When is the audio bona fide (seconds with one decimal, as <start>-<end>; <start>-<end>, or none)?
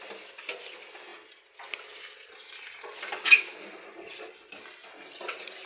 0.0-5.7